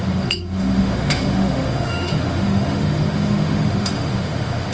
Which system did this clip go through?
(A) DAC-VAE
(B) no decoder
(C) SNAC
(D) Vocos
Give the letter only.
A